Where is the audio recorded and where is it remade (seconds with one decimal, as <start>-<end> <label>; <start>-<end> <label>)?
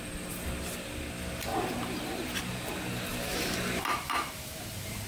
0.0-1.5 recorded; 1.5-2.7 remade; 2.7-3.1 recorded; 3.1-5.1 remade